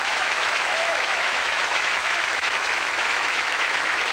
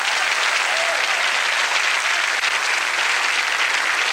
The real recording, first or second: second